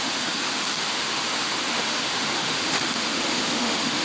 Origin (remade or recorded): remade